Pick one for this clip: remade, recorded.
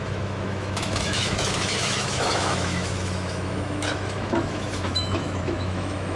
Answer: remade